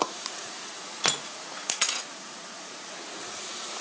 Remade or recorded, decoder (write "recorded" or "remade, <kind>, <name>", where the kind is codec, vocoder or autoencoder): remade, vocoder, Vocos